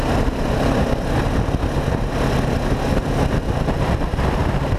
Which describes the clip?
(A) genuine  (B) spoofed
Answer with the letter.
A